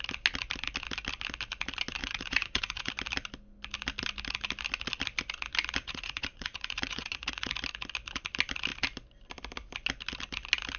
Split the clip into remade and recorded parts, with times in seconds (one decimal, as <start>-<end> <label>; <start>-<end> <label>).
0.0-2.0 recorded; 2.0-2.9 remade; 2.9-5.8 recorded; 5.8-7.5 remade; 7.5-10.8 recorded